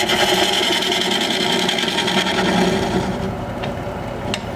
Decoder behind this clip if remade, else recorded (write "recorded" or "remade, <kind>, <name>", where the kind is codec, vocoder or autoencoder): recorded